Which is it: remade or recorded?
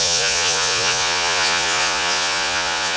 remade